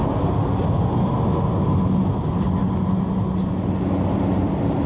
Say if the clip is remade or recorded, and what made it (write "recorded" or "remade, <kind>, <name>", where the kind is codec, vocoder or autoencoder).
recorded